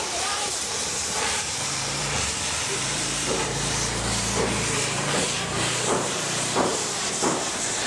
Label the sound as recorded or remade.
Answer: remade